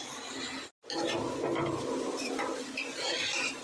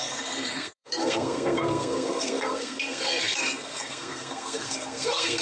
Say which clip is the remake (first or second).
second